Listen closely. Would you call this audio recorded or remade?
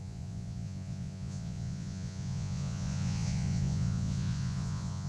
remade